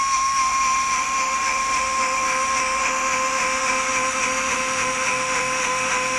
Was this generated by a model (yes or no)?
yes